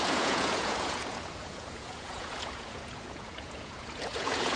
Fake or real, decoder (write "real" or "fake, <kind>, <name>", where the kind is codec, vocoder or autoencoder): fake, vocoder, Vocos